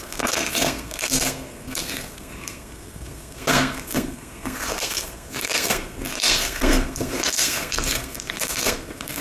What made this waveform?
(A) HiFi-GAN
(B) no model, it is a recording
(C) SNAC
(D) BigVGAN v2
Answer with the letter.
C